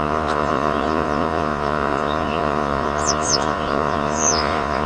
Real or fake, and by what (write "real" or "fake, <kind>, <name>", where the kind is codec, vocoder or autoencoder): fake, vocoder, Vocos